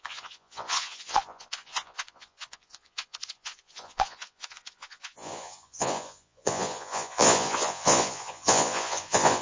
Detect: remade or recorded remade